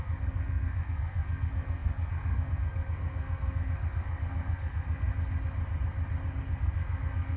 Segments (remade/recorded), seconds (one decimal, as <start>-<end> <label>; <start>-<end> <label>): 0.0-5.1 remade; 5.1-6.4 recorded; 6.4-7.4 remade